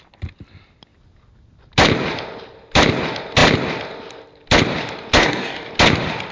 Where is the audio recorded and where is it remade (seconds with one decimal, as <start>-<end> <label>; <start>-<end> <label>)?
0.0-5.2 recorded; 5.2-5.7 remade; 5.7-6.3 recorded